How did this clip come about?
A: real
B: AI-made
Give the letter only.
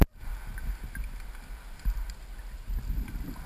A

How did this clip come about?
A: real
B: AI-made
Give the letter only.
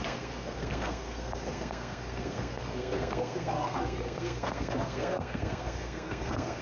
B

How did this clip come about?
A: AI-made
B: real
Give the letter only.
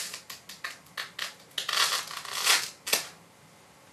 B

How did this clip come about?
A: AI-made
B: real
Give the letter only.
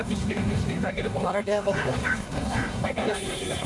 A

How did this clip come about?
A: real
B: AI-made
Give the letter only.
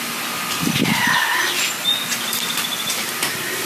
A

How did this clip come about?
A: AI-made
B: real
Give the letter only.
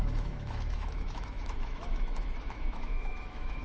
A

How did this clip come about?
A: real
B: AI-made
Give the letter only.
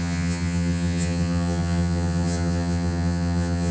B